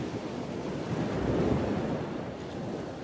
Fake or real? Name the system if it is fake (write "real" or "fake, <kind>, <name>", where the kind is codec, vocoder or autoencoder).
real